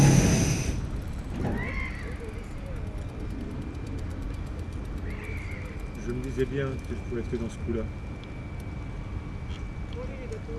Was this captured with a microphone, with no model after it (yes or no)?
yes